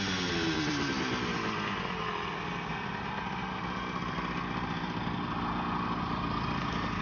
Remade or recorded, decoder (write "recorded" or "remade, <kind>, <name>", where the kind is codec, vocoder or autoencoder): recorded